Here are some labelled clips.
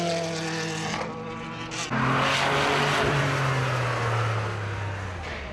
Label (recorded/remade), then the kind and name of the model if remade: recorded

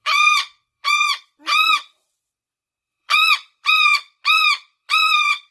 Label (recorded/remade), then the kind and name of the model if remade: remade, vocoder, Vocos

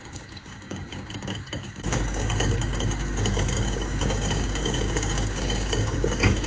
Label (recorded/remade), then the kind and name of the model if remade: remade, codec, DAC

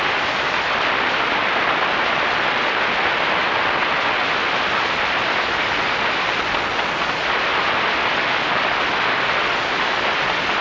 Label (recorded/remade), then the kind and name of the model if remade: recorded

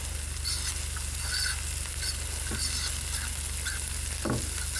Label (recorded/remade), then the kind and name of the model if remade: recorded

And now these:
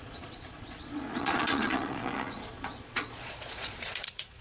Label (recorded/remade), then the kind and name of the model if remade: remade, vocoder, Vocos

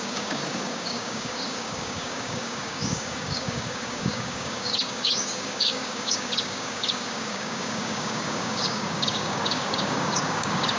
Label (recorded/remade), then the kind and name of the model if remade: remade, codec, DAC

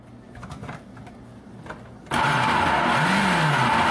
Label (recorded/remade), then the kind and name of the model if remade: recorded